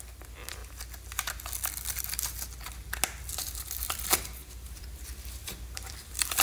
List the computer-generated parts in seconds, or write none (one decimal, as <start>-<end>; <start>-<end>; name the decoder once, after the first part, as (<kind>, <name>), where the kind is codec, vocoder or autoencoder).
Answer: 0.0-0.6 (vocoder, BigVGAN v2); 3.3-6.4